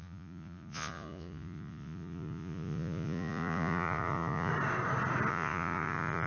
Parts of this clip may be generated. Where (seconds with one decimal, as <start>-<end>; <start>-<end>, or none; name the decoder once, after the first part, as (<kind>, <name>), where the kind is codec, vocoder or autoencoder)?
0.0-4.5 (vocoder, Vocos); 5.3-6.3